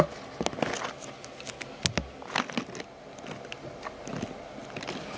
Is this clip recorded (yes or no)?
yes